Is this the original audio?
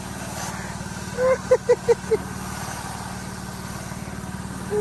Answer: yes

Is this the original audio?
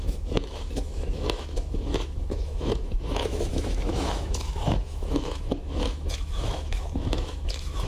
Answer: no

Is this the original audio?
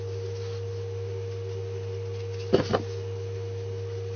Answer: yes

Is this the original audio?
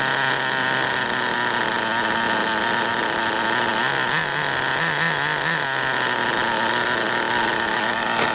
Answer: yes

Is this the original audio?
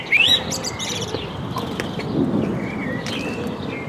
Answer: no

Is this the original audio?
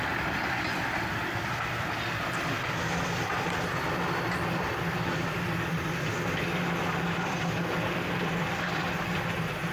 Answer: yes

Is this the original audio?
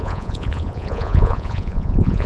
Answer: no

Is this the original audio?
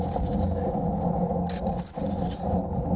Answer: yes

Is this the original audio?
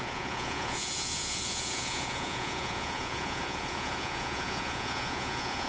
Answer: no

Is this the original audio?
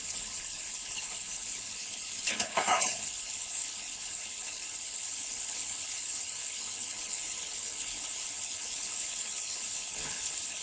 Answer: no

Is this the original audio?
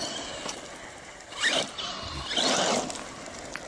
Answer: yes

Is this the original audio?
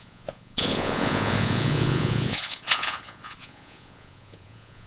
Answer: no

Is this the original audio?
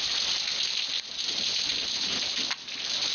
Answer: yes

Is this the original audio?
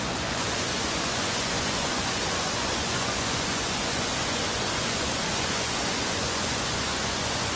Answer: no